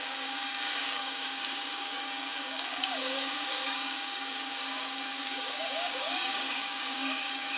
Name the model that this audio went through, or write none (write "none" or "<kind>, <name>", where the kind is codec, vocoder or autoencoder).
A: codec, DAC